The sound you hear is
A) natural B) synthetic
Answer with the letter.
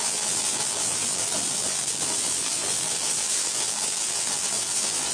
B